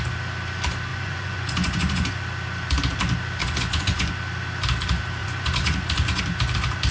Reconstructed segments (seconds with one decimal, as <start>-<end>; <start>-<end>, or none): 0.9-2.2; 3.4-4.1; 5.2-6.2